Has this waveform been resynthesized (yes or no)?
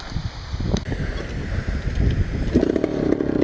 no